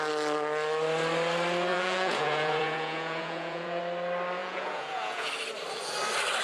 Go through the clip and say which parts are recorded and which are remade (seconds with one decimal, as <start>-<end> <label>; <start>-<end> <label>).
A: 0.0-1.7 recorded; 1.7-3.8 remade; 3.8-4.4 recorded; 4.4-5.3 remade; 5.3-6.4 recorded